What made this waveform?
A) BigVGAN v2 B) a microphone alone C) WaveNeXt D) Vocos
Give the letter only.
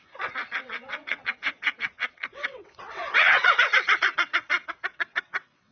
C